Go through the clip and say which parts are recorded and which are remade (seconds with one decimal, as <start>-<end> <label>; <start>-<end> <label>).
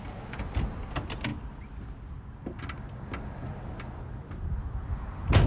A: 0.0-1.3 recorded; 1.3-2.6 remade; 2.6-5.5 recorded